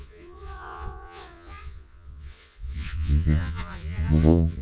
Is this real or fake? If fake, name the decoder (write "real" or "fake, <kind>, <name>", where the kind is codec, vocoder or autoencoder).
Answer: fake, vocoder, Vocos